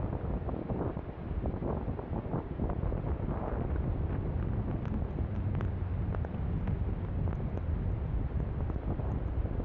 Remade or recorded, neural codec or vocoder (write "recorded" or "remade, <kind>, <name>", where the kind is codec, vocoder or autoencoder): recorded